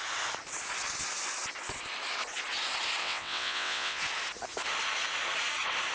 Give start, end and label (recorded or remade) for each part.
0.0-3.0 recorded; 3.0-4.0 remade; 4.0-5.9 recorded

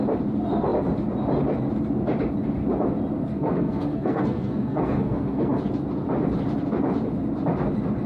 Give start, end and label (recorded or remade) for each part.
0.0-3.3 recorded; 3.3-5.6 remade; 5.6-8.1 recorded

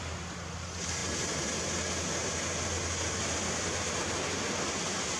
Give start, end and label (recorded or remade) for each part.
0.0-5.2 recorded

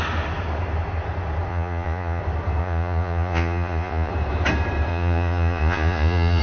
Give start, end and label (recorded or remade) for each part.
0.0-1.5 recorded; 1.5-2.2 remade; 2.2-2.6 recorded; 2.6-4.1 remade; 4.1-4.9 recorded; 4.9-6.4 remade

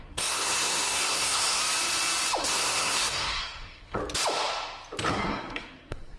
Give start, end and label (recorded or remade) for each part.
0.0-1.6 remade; 1.6-2.4 recorded; 2.4-4.0 remade; 4.0-5.1 recorded; 5.1-6.2 remade

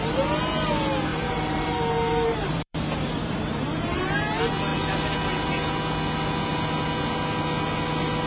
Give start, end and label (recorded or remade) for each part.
0.0-1.1 recorded; 1.1-4.0 remade; 4.0-8.3 recorded